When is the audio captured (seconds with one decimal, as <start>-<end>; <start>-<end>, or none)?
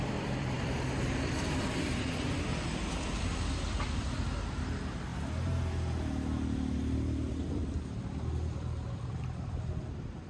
5.1-7.5